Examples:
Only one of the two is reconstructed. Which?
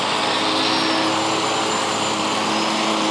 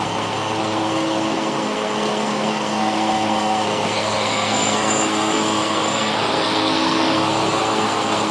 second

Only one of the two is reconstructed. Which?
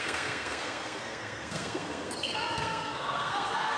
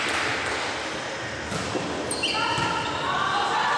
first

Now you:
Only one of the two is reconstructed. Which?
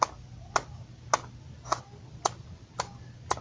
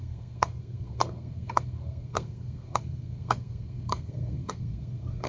second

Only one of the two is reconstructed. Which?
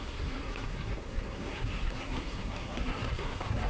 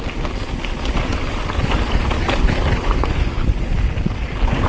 first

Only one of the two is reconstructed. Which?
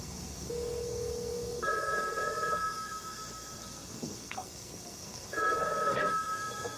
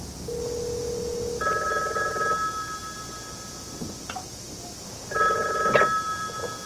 first